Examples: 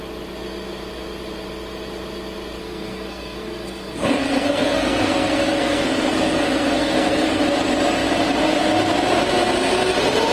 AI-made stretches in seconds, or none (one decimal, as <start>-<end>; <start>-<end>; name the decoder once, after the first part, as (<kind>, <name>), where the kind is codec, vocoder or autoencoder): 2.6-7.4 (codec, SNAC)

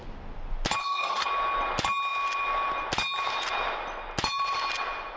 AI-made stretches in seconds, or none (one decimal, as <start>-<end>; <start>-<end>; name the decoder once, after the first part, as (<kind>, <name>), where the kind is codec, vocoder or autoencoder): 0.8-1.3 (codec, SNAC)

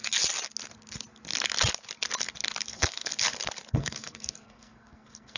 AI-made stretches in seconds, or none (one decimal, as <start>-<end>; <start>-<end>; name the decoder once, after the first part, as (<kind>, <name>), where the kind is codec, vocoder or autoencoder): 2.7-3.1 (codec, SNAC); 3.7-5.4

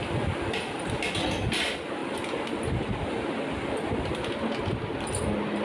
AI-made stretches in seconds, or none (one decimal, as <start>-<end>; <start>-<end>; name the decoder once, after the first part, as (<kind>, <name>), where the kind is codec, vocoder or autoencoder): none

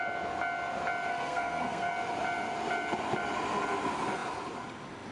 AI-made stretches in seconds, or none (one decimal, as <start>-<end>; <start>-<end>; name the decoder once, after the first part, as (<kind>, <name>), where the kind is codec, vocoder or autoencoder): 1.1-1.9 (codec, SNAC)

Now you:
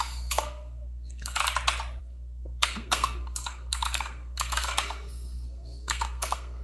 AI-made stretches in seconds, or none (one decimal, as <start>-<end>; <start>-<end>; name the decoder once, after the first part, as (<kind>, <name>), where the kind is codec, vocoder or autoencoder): 0.0-1.4 (codec, SNAC); 2.0-6.6

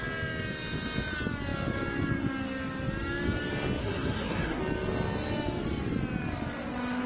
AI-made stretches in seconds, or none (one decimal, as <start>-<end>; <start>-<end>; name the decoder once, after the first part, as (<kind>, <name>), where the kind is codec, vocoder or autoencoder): 3.8-4.6 (codec, SNAC)

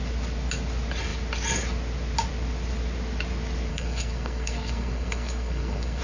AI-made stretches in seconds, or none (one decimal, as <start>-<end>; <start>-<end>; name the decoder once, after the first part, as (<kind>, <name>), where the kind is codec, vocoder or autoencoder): 3.7-6.0 (codec, SNAC)